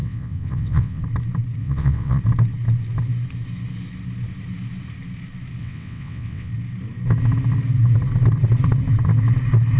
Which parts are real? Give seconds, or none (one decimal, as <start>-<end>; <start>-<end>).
1.0-1.6; 2.2-5.6; 6.5-9.8